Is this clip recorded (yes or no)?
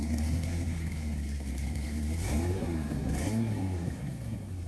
no